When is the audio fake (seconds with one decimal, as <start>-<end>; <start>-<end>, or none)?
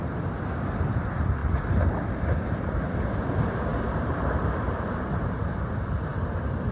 3.7-5.6